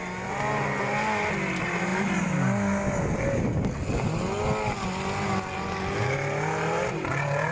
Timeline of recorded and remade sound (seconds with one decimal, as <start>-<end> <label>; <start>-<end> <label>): 0.0-7.5 recorded